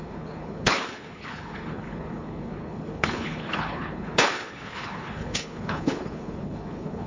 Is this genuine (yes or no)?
no